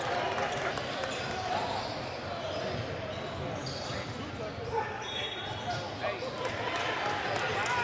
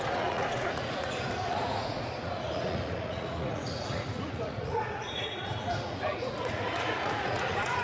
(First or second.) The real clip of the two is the first